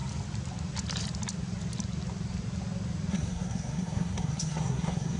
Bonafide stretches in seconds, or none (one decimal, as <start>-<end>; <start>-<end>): 0.0-3.1

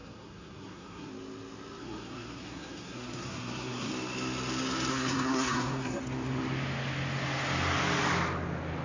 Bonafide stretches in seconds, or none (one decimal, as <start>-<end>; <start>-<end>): 1.1-1.8; 3.9-4.9; 6.0-8.8

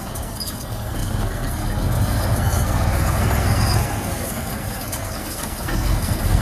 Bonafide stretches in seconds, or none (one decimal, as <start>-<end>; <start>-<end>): none

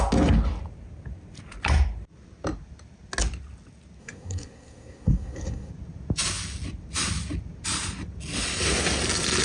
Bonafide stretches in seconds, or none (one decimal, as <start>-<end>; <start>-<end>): 0.0-4.0; 5.7-9.4